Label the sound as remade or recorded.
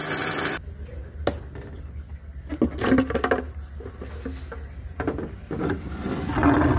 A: recorded